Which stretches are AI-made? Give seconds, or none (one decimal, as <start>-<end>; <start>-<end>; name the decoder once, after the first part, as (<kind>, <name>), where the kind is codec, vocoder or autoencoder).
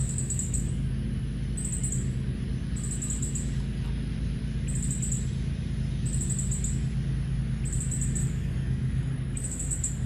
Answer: 0.0-0.9 (codec, DAC); 8.2-10.1